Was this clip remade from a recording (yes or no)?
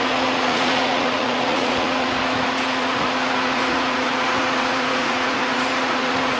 yes